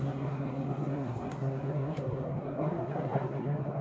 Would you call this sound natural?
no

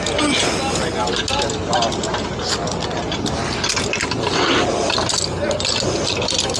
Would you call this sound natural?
yes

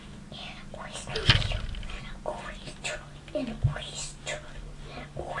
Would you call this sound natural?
yes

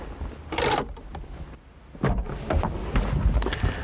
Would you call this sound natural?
yes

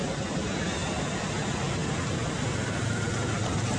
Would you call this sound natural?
yes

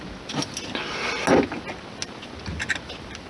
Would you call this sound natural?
yes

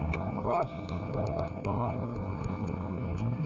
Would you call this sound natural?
no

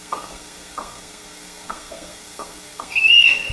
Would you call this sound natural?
no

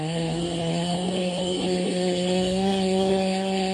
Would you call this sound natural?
no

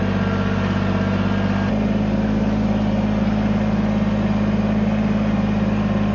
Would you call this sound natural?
yes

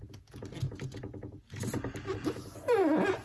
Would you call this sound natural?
yes